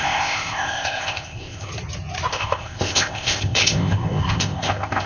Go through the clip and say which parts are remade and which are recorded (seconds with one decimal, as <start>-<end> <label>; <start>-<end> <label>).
0.0-1.7 remade; 1.7-2.3 recorded; 2.3-5.1 remade